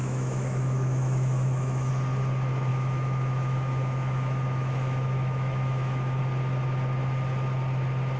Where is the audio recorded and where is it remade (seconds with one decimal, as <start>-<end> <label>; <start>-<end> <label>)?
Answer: 0.0-1.9 remade; 1.9-2.7 recorded; 2.7-6.2 remade; 6.2-8.2 recorded